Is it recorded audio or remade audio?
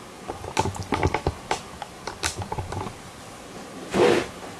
remade